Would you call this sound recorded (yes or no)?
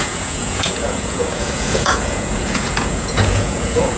no